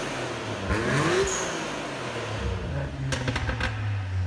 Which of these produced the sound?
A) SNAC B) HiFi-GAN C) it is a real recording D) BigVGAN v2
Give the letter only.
C